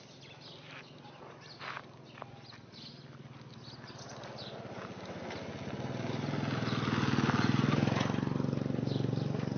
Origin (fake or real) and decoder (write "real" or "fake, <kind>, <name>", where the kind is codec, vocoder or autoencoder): real